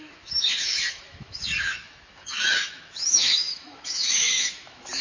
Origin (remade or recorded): remade